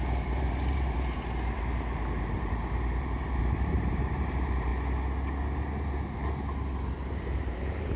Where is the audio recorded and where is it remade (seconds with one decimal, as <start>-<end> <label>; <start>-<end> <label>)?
0.0-4.7 remade; 4.7-7.1 recorded; 7.1-8.0 remade